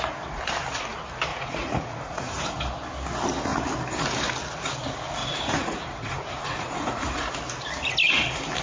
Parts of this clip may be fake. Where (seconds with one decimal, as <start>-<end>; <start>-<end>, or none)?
1.3-2.6; 5.2-7.3